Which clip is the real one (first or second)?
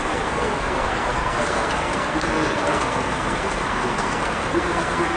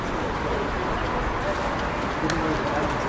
second